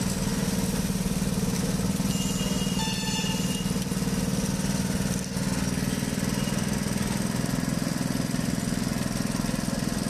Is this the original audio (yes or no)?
yes